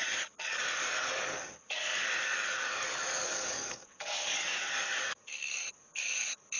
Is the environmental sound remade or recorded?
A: remade